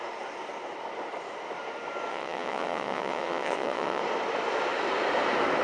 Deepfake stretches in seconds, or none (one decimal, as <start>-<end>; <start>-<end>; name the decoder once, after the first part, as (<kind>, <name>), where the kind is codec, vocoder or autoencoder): 2.1-4.0 (vocoder, WaveNeXt)